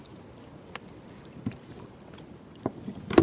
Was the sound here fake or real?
real